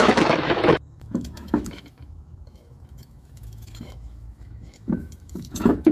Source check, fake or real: fake